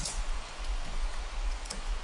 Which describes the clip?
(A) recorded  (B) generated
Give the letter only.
B